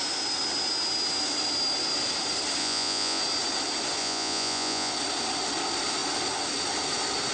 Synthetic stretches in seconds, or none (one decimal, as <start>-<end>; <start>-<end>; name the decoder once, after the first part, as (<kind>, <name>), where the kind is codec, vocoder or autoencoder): 2.6-3.2 (vocoder, Vocos); 4.0-4.9